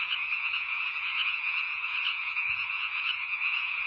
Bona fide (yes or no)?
no